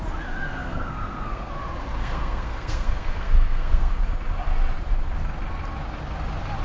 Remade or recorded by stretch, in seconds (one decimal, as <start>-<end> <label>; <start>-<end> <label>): 0.0-0.6 recorded; 0.6-1.5 remade; 1.5-2.0 recorded; 2.0-4.0 remade; 4.0-6.6 recorded